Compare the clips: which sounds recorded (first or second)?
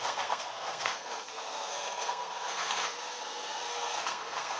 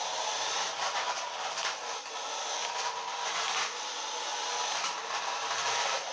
second